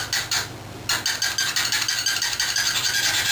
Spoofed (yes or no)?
no